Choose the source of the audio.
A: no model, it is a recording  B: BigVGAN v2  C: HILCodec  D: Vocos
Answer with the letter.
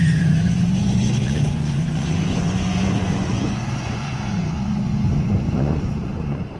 D